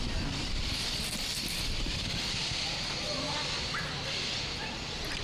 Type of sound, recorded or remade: recorded